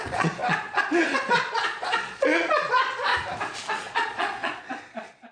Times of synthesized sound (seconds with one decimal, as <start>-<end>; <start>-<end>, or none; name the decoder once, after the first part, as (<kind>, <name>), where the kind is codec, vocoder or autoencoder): 0.0-3.1 (vocoder, Vocos); 3.8-5.3